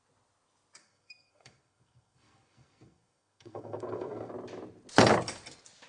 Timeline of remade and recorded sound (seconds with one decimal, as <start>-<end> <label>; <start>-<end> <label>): 0.0-0.8 recorded; 0.8-4.3 remade; 4.3-5.9 recorded